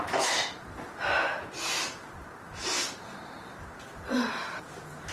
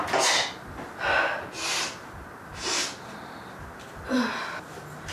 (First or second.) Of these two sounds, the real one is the second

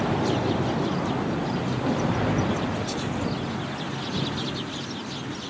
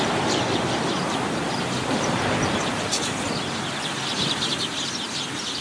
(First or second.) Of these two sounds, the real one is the first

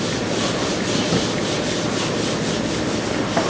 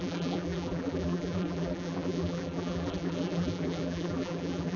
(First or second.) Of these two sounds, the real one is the first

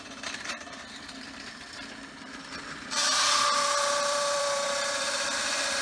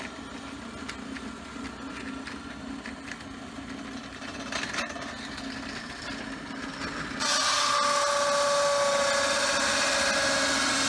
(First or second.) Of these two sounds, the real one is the second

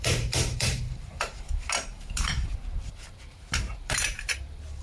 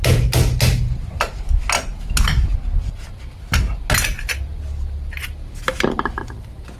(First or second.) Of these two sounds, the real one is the second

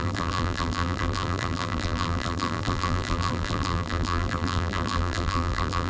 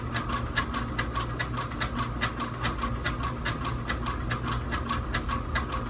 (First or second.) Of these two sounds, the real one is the second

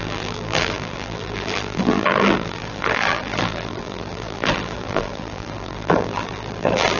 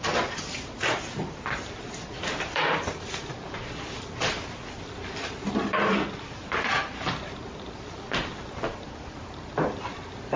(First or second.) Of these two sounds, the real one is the second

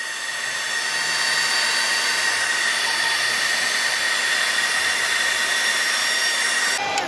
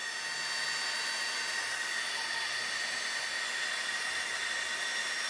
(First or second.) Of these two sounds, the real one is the second